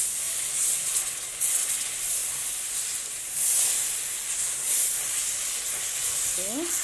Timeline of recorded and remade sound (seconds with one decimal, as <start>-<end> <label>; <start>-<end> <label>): 0.0-6.8 recorded